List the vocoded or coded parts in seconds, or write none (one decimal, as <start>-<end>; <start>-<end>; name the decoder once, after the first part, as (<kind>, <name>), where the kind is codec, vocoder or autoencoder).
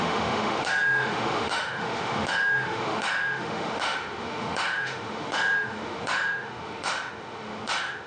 0.0-8.1 (autoencoder, DAC-VAE)